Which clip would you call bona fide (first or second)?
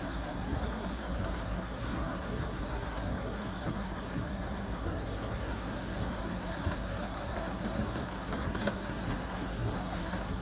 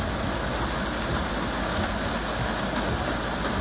second